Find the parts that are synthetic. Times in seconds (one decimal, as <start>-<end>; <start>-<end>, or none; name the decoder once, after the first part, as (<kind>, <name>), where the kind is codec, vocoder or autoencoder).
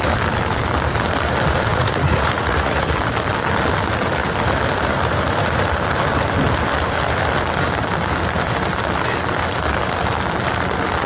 1.7-2.9 (vocoder, Vocos)